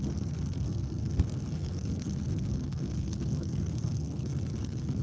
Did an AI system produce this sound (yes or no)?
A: yes